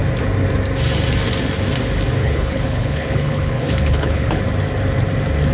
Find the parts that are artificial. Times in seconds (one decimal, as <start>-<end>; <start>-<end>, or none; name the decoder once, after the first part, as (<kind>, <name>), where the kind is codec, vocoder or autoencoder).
2.2-4.4 (codec, HILCodec)